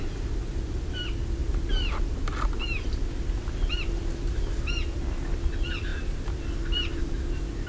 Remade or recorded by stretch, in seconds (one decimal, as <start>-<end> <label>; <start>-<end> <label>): 0.0-7.7 recorded